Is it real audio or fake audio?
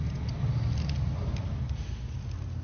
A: real